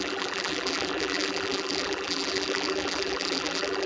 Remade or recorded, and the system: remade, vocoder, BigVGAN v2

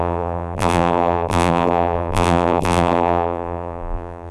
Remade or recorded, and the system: remade, vocoder, BigVGAN v2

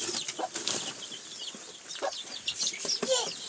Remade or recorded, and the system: remade, vocoder, BigVGAN v2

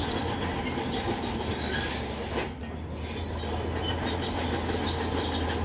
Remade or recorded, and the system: recorded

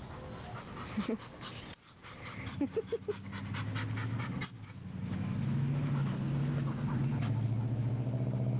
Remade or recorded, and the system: recorded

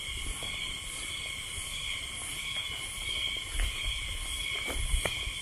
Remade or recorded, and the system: remade, vocoder, BigVGAN v2